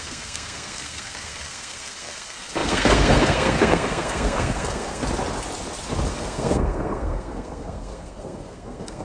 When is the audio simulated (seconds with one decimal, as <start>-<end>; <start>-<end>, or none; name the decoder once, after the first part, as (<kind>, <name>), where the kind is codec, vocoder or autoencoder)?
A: 0.0-5.0 (codec, SNAC); 6.1-9.0